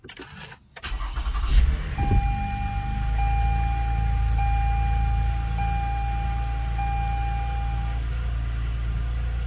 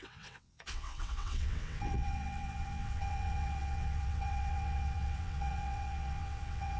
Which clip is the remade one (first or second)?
second